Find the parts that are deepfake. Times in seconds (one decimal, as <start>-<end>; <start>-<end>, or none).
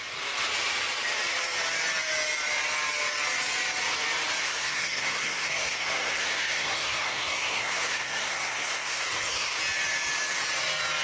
4.4-9.6